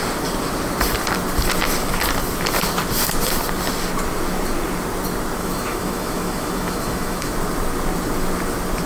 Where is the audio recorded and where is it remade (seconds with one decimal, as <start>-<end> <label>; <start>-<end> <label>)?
0.0-5.4 recorded; 5.4-7.3 remade; 7.3-8.9 recorded